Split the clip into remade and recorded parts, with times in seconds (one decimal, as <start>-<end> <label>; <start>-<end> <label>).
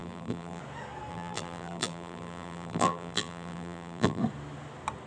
0.0-0.6 remade; 0.6-1.1 recorded; 1.1-4.2 remade; 4.2-5.1 recorded